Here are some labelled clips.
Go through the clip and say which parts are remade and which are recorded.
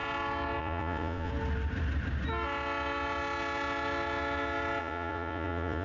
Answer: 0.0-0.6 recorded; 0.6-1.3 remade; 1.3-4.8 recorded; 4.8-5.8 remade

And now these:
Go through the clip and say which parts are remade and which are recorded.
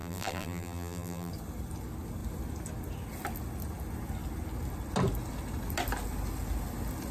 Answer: 0.0-1.3 remade; 1.3-7.1 recorded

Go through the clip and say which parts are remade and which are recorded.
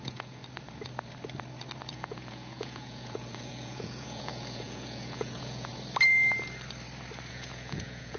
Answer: 0.0-0.4 remade; 0.4-1.9 recorded; 1.9-5.7 remade; 5.7-7.3 recorded; 7.3-8.2 remade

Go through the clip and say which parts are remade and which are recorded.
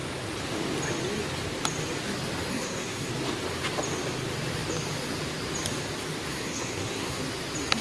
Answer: 0.0-2.5 recorded; 2.5-3.1 remade; 3.1-6.3 recorded; 6.3-7.2 remade; 7.2-7.8 recorded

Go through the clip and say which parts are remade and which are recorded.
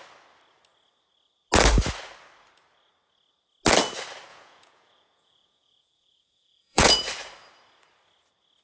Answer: 0.0-4.3 recorded; 4.3-6.9 remade; 6.9-8.6 recorded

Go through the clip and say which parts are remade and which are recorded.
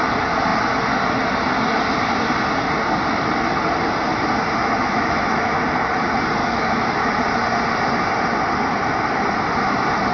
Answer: 0.0-4.6 recorded; 4.6-5.6 remade; 5.6-6.4 recorded; 6.4-7.1 remade; 7.1-10.1 recorded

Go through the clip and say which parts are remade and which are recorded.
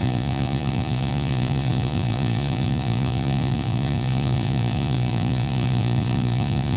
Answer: 0.0-6.8 remade